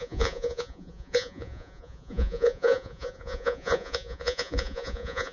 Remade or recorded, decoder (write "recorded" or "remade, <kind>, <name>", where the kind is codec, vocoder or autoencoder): remade, vocoder, Vocos